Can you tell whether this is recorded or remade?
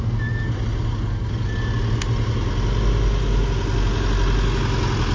recorded